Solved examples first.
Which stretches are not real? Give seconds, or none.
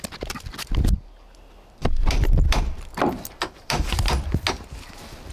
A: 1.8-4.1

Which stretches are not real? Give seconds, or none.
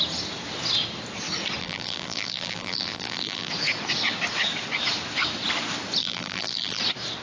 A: 1.6-3.5; 6.0-6.8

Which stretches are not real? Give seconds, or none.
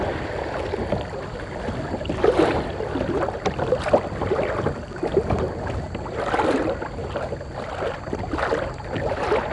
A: none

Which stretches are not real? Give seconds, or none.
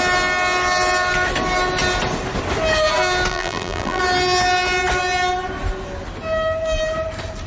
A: 3.3-4.0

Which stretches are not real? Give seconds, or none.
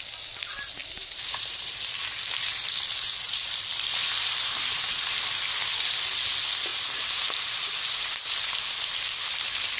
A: 0.8-1.9; 6.7-8.3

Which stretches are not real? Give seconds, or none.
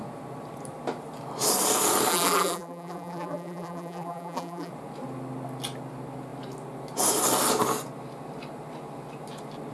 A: 2.1-4.7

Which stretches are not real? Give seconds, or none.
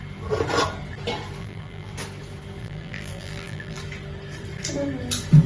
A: 1.4-1.9; 2.6-3.8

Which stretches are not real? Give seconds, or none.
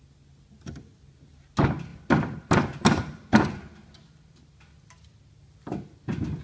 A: none